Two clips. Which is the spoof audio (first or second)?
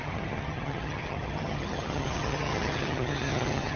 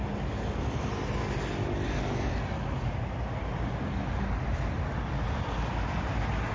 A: first